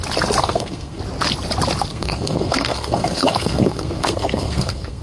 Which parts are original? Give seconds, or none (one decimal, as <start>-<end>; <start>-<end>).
0.0-0.4; 1.0-1.9